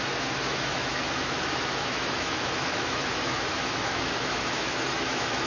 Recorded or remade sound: remade